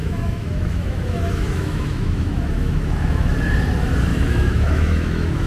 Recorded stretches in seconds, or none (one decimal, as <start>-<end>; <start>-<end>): 3.3-4.1